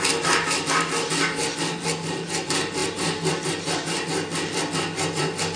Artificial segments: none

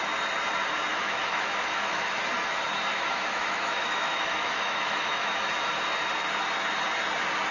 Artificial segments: 0.9-2.2; 2.9-5.5

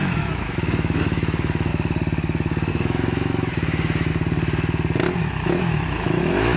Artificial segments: 0.0-1.7; 2.7-4.1; 5.2-6.6